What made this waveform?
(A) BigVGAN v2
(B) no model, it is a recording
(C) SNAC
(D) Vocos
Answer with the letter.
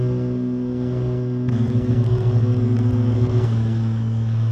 C